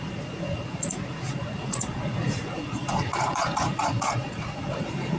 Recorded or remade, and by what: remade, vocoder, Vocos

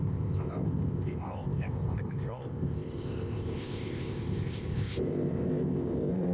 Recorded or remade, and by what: remade, codec, ZipCodec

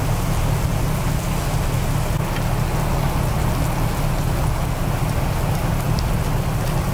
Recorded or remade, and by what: recorded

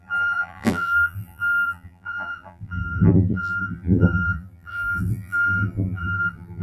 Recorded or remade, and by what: remade, vocoder, BigVGAN v2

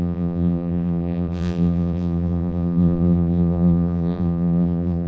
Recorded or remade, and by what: remade, vocoder, BigVGAN v2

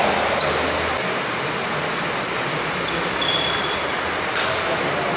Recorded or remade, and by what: recorded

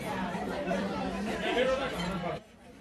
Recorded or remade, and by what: remade, vocoder, BigVGAN v2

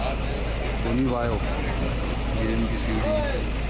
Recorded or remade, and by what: recorded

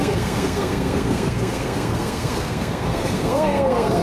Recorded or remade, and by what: remade, codec, SNAC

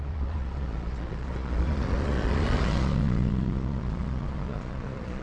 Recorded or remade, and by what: remade, vocoder, Vocos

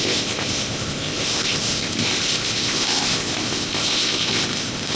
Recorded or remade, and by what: remade, codec, ZipCodec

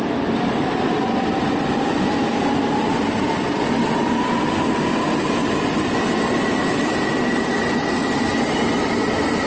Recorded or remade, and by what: recorded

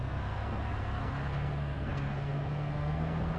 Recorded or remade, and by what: remade, codec, SNAC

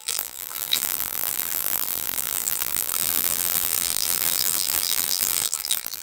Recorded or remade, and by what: remade, vocoder, BigVGAN v2